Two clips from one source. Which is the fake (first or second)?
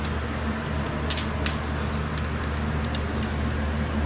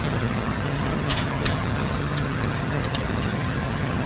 second